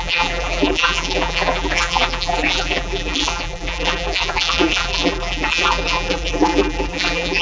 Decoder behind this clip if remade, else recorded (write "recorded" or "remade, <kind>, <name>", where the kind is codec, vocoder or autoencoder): remade, vocoder, BigVGAN v2